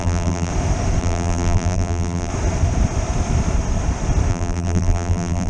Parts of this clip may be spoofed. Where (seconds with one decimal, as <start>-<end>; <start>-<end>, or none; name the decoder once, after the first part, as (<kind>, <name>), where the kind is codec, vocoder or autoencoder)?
0.0-0.5 (vocoder, BigVGAN v2); 1.0-2.3; 4.3-5.5